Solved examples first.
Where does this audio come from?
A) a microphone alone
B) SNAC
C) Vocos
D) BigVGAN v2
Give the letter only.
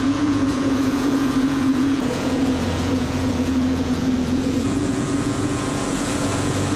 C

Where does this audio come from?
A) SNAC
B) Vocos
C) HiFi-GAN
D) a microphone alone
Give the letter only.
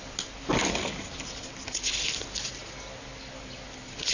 D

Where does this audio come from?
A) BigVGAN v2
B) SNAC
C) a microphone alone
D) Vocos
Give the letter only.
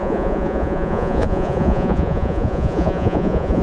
D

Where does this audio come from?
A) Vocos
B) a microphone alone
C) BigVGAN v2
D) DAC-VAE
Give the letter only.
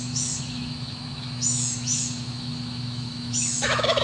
D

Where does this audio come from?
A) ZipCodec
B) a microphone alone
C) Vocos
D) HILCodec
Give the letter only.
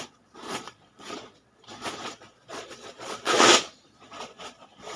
C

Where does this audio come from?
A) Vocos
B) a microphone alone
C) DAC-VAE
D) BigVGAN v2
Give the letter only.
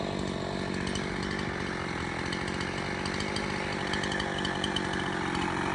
B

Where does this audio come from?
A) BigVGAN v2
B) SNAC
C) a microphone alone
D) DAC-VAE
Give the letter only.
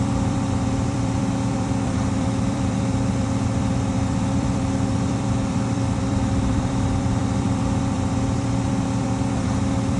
A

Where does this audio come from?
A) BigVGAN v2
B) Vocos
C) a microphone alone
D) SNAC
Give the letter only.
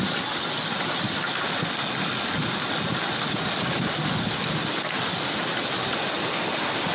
C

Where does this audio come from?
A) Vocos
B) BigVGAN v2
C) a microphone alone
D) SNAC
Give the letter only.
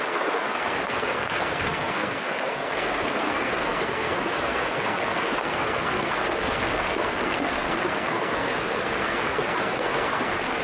D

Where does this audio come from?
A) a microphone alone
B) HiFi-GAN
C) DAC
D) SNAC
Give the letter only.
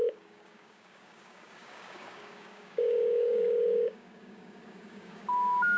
C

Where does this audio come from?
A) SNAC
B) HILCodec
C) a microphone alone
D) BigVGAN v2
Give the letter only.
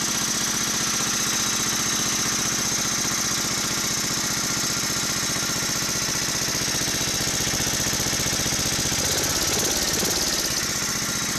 C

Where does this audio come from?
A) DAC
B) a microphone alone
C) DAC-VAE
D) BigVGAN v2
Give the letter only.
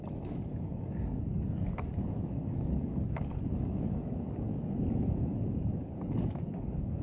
A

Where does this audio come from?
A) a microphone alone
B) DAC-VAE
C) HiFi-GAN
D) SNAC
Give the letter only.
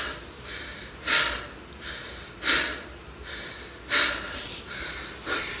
A